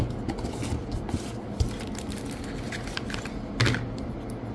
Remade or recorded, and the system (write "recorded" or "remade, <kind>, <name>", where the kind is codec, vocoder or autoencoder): recorded